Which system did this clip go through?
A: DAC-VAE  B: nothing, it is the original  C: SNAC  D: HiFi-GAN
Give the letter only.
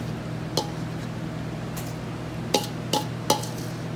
B